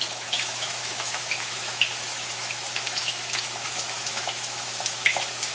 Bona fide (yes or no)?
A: no